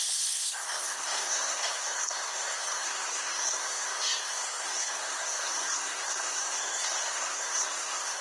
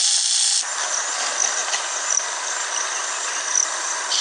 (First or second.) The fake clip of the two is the first